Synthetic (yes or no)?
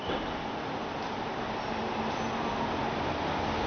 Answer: no